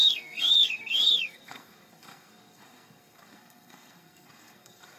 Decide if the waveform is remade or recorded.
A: remade